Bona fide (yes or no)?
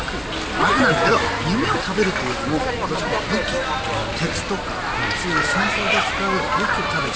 yes